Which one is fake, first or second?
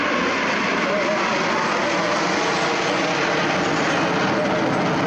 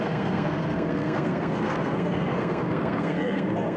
second